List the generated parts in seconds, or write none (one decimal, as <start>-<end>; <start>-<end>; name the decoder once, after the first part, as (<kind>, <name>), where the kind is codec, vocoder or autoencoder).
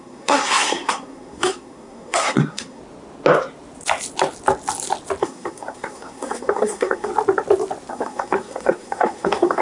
0.0-2.8 (codec, SNAC); 5.2-7.1; 7.9-9.6